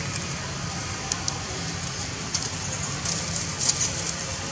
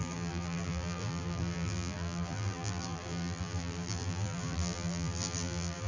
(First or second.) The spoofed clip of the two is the second